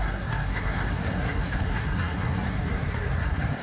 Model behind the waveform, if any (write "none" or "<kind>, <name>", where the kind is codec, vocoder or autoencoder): codec, SNAC